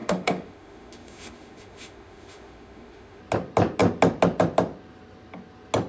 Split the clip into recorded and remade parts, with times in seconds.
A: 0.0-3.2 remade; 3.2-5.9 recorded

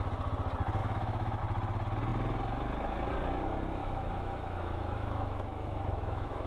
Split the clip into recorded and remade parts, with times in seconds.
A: 0.0-0.8 recorded; 0.8-1.4 remade; 1.4-3.8 recorded; 3.8-6.5 remade

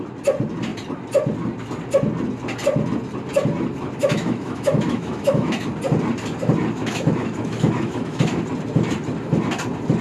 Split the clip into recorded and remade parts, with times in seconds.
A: 0.0-4.0 recorded; 4.0-5.6 remade; 5.6-6.8 recorded; 6.8-8.4 remade; 8.4-10.0 recorded